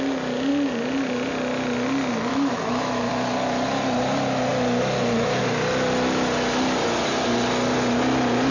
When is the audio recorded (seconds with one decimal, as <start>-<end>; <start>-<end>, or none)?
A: 0.0-2.3; 3.1-8.5